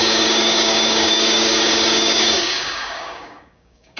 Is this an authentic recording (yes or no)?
no